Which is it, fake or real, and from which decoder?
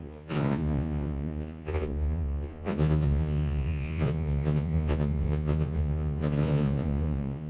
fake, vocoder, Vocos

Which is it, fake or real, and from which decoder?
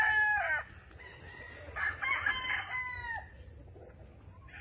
real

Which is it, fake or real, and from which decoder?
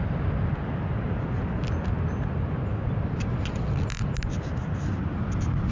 real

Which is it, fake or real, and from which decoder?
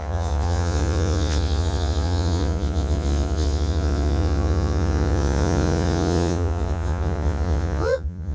fake, vocoder, Vocos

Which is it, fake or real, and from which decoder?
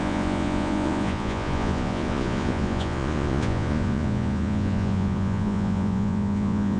fake, vocoder, Vocos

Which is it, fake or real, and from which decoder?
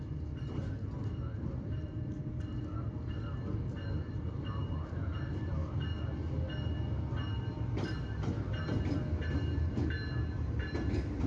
real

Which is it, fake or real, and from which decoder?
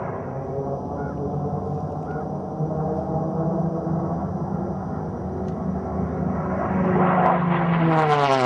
real